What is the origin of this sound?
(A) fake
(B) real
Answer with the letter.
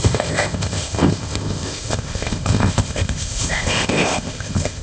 A